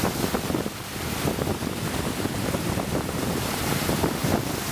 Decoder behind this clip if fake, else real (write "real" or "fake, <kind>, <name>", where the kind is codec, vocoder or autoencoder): fake, vocoder, BigVGAN v2